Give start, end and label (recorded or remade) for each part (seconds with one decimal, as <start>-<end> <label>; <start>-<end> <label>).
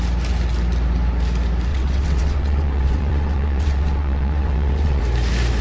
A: 0.0-1.7 recorded; 1.7-5.0 remade; 5.0-5.6 recorded